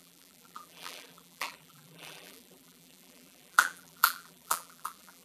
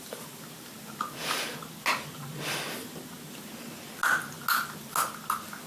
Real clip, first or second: second